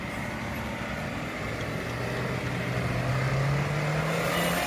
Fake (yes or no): no